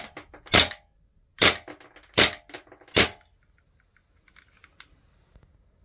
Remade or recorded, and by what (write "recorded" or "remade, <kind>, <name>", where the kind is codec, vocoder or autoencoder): recorded